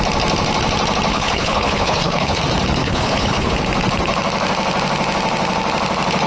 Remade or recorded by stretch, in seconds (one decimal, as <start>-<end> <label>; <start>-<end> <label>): 0.0-1.1 recorded; 1.1-2.4 remade; 2.4-2.8 recorded; 2.8-3.5 remade; 3.5-6.3 recorded